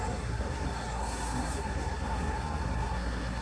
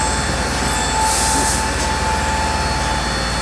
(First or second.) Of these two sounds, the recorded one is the second